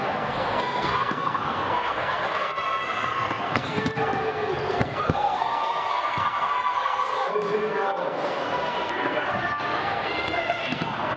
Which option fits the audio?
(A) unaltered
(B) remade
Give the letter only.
B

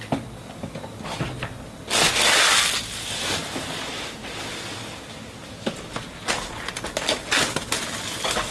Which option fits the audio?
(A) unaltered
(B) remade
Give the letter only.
A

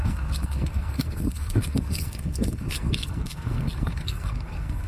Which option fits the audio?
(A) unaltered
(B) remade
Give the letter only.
B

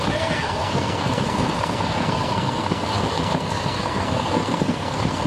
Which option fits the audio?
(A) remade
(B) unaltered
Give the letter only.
A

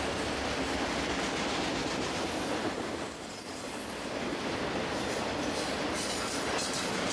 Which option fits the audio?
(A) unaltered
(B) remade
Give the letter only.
A